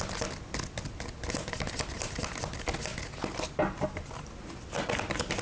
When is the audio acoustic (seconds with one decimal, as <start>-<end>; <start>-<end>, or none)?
0.0-5.4